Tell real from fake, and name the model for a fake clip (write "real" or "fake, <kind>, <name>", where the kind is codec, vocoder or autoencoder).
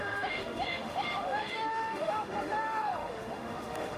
fake, autoencoder, DAC-VAE